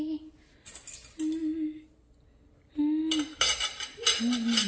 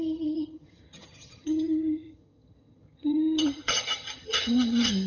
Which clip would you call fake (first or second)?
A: second